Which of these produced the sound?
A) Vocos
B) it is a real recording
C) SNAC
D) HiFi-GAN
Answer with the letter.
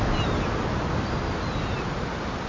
B